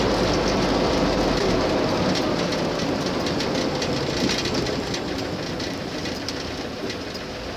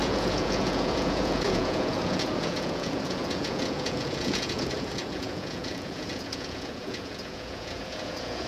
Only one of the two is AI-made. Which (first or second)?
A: second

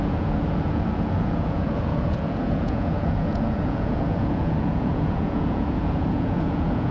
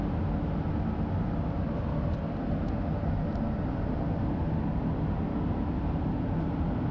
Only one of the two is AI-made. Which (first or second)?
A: first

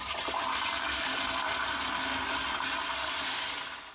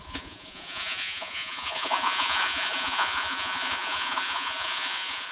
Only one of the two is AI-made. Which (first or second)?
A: second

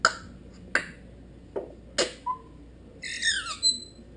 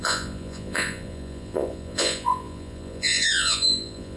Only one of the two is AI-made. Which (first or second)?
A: second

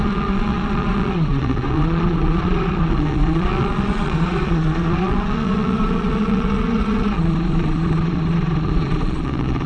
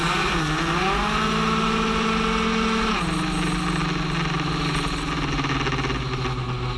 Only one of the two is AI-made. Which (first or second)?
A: first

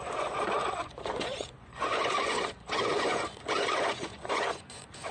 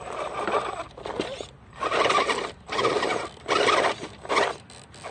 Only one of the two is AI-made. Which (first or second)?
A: first